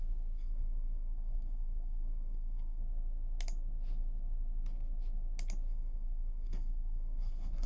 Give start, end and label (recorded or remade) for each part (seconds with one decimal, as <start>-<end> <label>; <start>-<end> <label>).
0.0-2.8 remade; 2.8-5.7 recorded; 5.7-7.7 remade